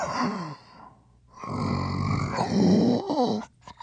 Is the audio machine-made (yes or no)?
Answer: no